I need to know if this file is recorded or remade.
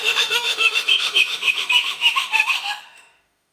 remade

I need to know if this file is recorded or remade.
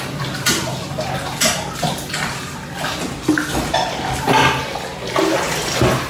recorded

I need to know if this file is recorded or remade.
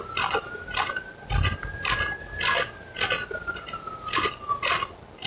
recorded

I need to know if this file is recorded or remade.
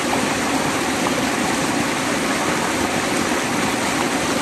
recorded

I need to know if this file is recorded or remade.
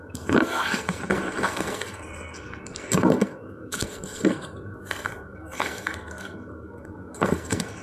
remade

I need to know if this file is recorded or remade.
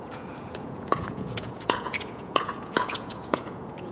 remade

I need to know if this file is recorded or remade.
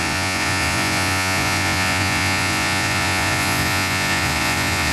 remade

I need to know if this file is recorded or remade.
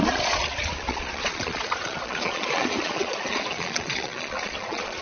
remade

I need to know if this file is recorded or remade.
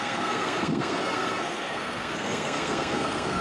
remade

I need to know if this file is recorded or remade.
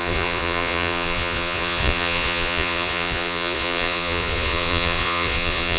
remade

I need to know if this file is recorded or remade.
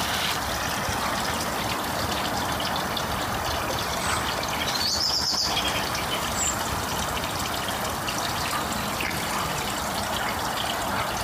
recorded